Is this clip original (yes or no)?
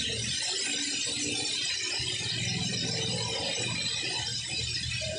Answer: yes